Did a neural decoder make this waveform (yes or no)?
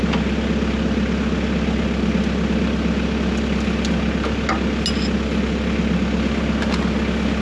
no